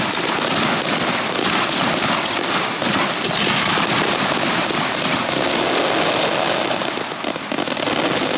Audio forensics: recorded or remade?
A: remade